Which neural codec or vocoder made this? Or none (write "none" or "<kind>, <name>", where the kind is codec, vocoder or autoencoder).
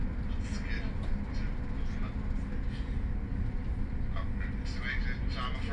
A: none